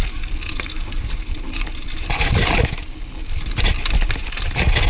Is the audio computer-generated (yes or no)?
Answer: no